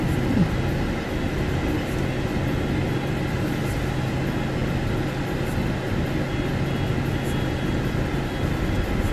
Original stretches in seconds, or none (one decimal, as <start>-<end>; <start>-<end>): 0.0-9.1